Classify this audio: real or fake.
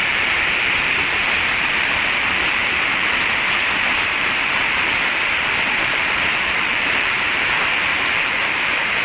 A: fake